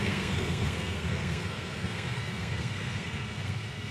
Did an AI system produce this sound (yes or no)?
yes